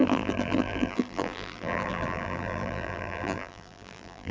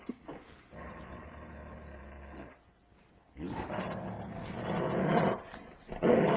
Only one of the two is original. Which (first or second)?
second